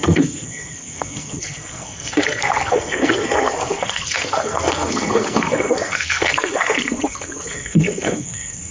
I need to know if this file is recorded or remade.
remade